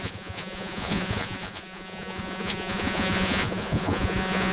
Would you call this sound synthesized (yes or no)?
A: yes